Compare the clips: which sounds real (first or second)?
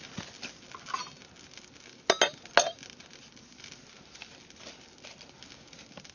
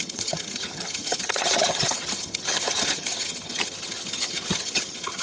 first